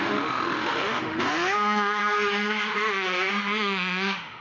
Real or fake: fake